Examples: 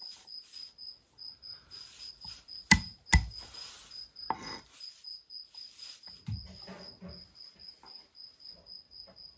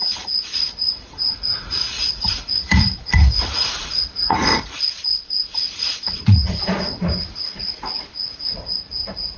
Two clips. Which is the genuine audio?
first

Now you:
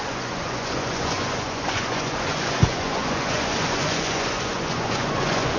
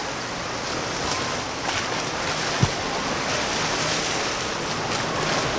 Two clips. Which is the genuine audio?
second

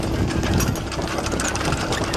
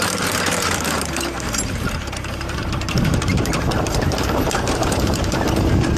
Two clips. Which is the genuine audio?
first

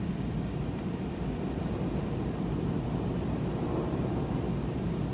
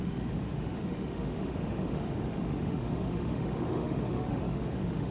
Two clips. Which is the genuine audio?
first